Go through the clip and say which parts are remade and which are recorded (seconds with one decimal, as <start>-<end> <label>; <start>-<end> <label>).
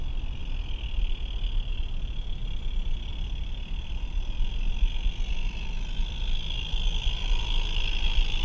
0.0-8.4 recorded